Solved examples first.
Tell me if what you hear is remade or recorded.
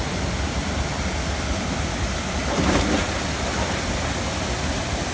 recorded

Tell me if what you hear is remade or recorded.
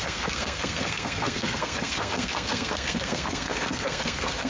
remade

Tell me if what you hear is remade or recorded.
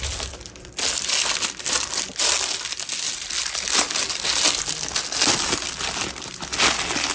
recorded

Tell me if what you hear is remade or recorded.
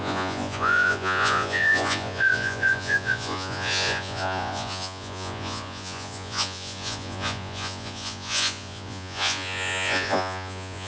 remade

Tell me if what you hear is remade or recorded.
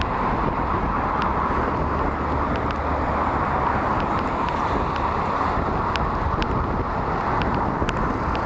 recorded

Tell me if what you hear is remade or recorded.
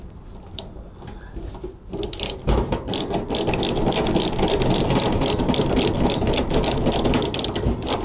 recorded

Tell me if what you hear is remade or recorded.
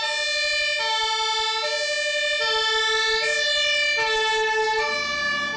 recorded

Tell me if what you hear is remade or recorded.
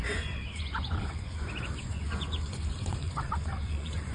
remade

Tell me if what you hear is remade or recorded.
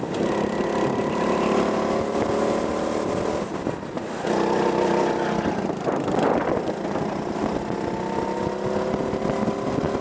recorded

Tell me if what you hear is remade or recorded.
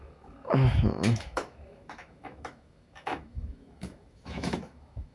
remade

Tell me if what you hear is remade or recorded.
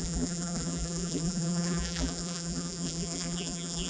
remade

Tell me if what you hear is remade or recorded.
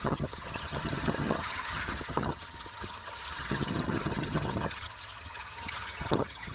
remade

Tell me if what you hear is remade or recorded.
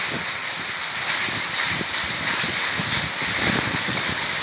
remade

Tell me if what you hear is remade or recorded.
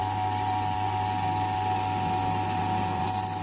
recorded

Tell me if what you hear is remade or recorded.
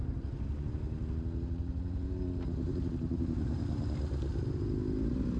recorded